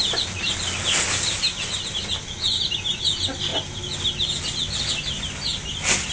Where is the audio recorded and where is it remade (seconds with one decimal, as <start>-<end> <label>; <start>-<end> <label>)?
0.0-6.1 recorded